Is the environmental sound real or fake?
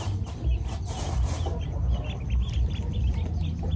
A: real